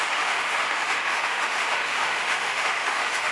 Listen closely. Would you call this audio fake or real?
fake